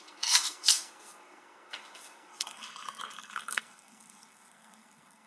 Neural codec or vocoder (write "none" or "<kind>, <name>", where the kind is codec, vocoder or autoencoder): codec, SNAC